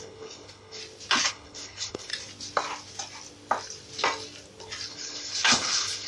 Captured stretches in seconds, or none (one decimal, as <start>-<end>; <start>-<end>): 0.8-1.3; 2.1-4.9